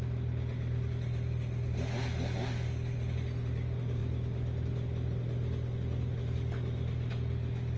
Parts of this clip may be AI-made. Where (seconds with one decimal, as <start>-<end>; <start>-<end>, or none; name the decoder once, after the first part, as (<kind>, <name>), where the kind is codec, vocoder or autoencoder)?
none